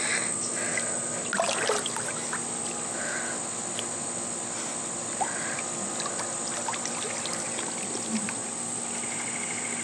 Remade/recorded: recorded